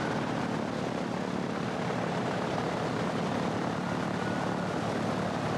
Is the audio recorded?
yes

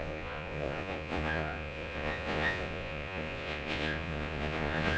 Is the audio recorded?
no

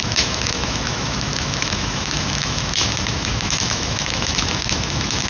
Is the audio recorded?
no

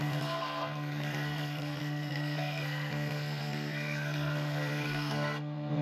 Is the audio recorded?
no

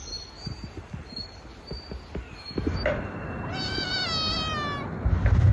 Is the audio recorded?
yes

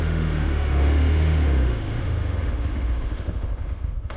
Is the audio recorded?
no